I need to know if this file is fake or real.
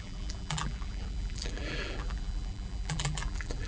fake